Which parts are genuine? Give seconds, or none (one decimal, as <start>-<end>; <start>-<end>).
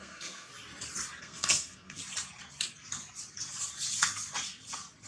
0.5-1.2; 2.0-5.1